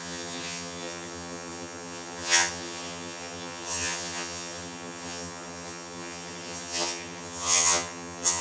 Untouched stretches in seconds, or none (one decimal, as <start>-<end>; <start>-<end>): none